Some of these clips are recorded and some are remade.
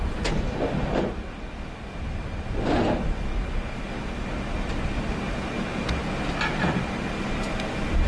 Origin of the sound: recorded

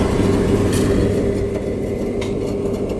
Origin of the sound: recorded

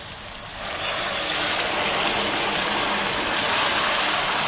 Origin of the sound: recorded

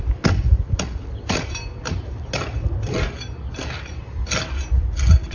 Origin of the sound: recorded